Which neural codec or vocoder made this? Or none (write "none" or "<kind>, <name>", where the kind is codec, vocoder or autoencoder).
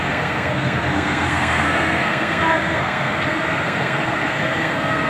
codec, SNAC